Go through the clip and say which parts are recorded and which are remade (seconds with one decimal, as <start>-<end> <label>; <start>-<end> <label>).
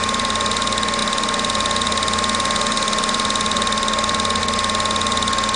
0.0-5.6 recorded